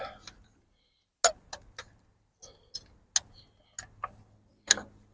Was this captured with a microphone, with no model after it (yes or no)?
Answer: yes